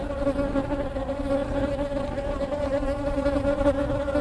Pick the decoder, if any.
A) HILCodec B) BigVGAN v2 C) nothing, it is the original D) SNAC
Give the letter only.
C